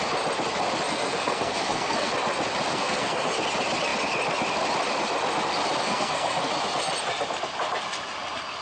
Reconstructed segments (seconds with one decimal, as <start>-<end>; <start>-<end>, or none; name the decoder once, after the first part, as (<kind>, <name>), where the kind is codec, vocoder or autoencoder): 0.9-2.1 (codec, SNAC); 2.7-3.3; 5.8-6.5